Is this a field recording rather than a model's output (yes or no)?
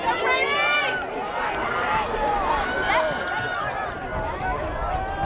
yes